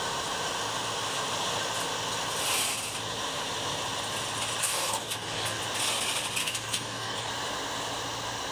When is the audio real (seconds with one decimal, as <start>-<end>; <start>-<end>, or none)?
0.0-4.6; 5.6-6.4; 7.3-8.5